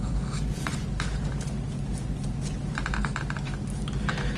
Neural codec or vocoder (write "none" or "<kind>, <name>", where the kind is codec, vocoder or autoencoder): none